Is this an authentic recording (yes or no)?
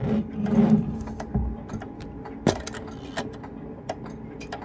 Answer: yes